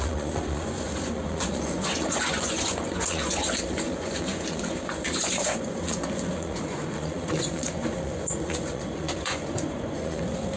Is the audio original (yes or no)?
no